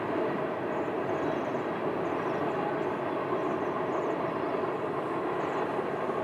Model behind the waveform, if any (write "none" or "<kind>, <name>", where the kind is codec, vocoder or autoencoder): none